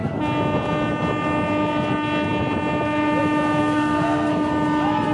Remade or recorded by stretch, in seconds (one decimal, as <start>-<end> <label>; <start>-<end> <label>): 0.0-3.6 recorded; 3.6-4.3 remade; 4.3-5.1 recorded

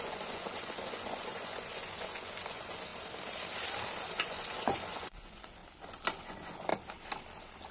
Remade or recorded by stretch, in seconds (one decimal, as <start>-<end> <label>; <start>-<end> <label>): 0.0-2.9 remade; 2.9-4.1 recorded; 4.1-5.6 remade; 5.6-6.2 recorded; 6.2-6.7 remade; 6.7-7.7 recorded

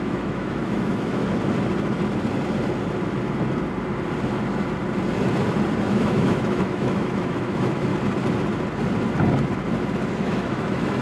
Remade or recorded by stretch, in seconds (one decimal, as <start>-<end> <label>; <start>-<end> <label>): 0.0-1.2 remade; 1.2-5.9 recorded; 5.9-7.9 remade; 7.9-10.2 recorded; 10.2-11.0 remade